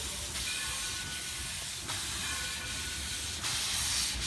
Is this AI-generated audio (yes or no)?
no